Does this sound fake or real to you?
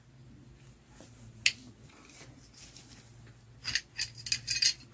real